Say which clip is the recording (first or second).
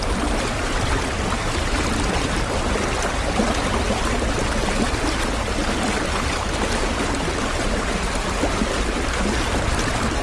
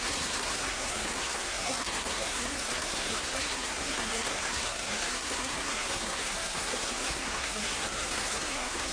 first